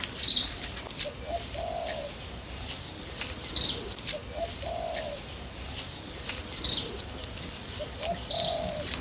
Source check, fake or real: fake